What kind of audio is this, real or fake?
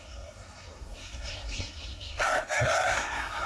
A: fake